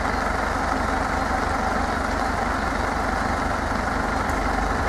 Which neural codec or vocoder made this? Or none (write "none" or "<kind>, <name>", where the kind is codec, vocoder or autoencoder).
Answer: none